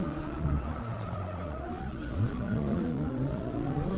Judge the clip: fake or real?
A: fake